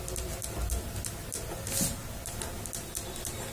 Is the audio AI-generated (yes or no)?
no